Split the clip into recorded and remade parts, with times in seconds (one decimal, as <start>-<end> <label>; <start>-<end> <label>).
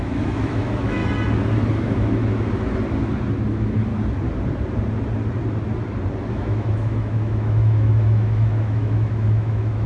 0.0-1.0 remade; 1.0-1.8 recorded; 1.8-2.2 remade; 2.2-3.5 recorded; 3.5-3.9 remade; 3.9-6.3 recorded; 6.3-9.9 remade